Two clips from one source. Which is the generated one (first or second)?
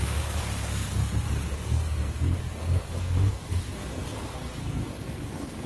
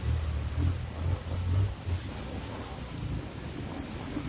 first